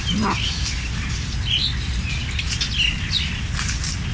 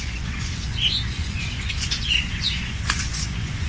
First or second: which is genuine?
first